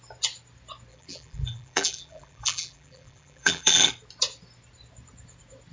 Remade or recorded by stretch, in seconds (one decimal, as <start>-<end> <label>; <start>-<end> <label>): 0.0-0.9 recorded; 0.9-3.9 remade; 3.9-5.7 recorded